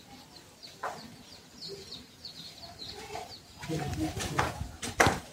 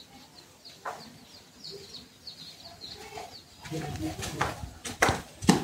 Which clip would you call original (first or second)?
second